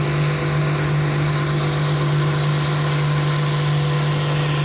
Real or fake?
real